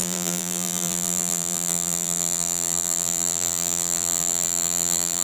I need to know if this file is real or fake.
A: fake